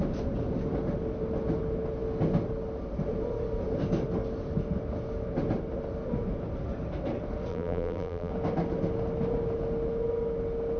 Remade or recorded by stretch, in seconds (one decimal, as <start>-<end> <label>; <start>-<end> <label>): 0.0-7.5 recorded; 7.5-8.3 remade; 8.3-10.8 recorded